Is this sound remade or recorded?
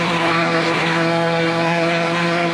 remade